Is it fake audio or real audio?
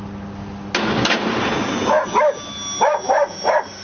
real